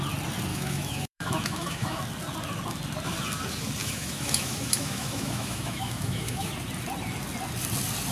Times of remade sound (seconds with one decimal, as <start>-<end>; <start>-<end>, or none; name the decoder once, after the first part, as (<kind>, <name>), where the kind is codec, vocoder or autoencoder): 0.5-2.0 (autoencoder, DAC-VAE); 3.8-6.5